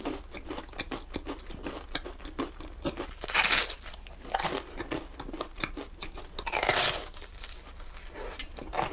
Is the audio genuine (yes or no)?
yes